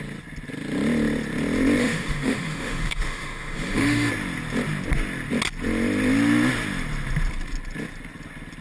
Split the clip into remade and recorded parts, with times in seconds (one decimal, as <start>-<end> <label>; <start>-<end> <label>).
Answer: 0.0-1.8 recorded; 1.8-4.1 remade; 4.1-8.6 recorded